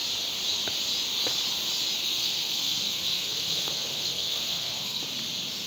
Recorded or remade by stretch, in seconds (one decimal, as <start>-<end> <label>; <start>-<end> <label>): 0.0-2.0 recorded; 2.0-5.0 remade; 5.0-5.7 recorded